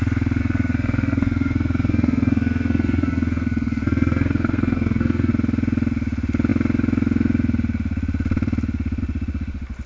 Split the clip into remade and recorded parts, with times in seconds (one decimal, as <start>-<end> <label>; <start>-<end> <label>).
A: 0.0-0.4 recorded; 0.4-5.3 remade; 5.3-9.9 recorded